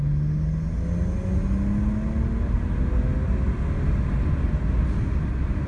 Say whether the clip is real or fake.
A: real